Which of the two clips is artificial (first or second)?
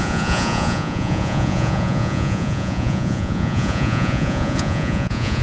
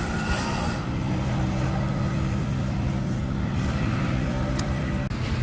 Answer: first